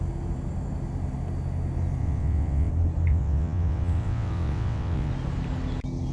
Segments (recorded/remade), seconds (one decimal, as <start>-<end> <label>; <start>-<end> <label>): 0.0-2.0 recorded; 2.0-2.7 remade; 2.7-3.1 recorded; 3.1-5.1 remade; 5.1-6.1 recorded